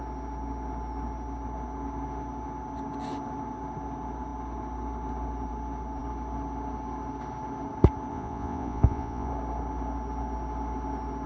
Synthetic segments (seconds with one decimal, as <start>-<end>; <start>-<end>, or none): 8.1-9.3